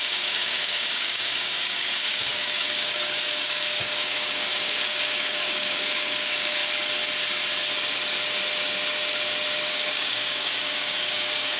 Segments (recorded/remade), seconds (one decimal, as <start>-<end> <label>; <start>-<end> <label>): 0.0-6.6 remade; 6.6-9.7 recorded; 9.7-11.6 remade

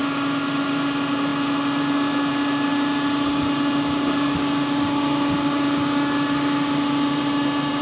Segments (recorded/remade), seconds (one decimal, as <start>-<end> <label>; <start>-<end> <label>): 0.0-7.8 recorded

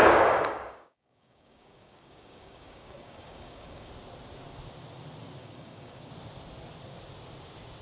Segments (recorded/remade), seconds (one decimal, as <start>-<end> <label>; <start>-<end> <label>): 0.0-3.9 remade; 3.9-5.4 recorded; 5.4-6.1 remade; 6.1-7.8 recorded

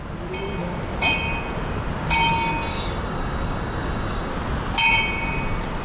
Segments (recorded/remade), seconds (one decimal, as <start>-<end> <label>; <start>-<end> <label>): 0.0-2.7 recorded; 2.7-4.3 remade; 4.3-5.8 recorded

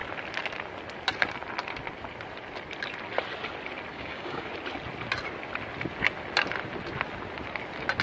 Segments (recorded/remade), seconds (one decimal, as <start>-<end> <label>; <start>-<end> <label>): 0.0-3.9 recorded; 3.9-4.5 remade; 4.5-8.0 recorded

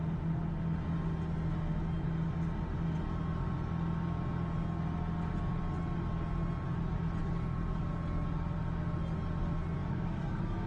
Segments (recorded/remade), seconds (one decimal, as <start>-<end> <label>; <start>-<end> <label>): 0.0-7.2 recorded; 7.2-7.9 remade; 7.9-9.8 recorded; 9.8-10.7 remade

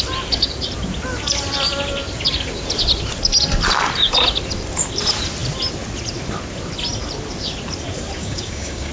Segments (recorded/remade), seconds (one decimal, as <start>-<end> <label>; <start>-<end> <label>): 0.0-8.2 recorded; 8.2-8.9 remade